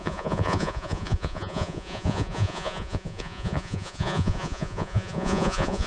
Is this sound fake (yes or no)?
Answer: yes